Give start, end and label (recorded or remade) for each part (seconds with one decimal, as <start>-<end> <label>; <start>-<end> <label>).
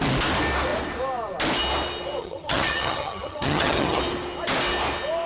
0.0-2.2 recorded; 2.2-4.0 remade; 4.0-5.3 recorded